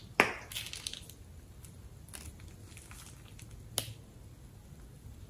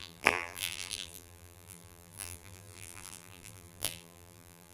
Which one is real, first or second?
first